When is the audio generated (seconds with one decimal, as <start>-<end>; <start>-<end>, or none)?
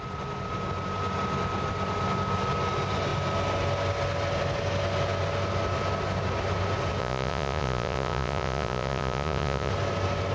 7.0-9.7